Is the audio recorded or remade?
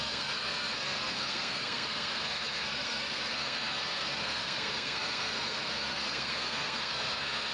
remade